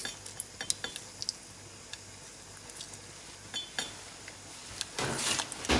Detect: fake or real real